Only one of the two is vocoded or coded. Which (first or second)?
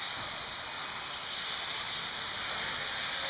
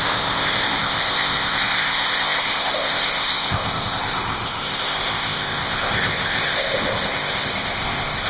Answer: second